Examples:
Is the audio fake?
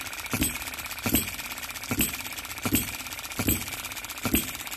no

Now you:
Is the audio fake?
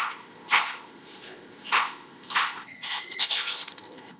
yes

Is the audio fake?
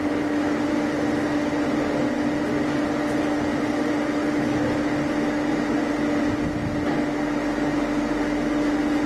no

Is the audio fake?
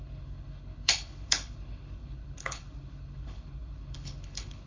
yes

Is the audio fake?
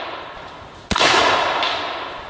no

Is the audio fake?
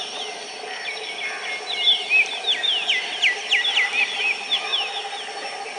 no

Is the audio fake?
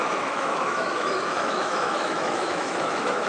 yes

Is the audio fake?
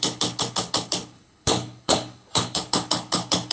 yes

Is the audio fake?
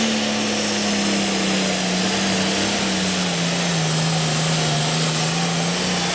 no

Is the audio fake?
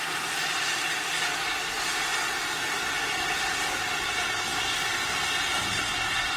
no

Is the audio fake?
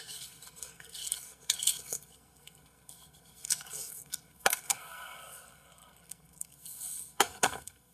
yes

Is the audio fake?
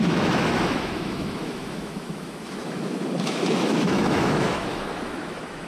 yes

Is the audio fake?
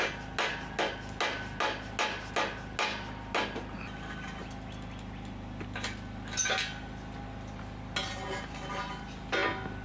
no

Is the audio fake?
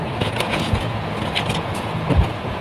yes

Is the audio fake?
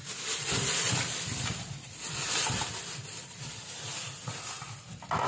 no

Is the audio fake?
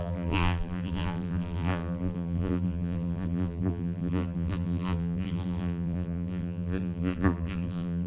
yes